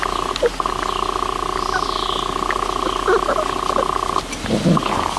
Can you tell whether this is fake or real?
real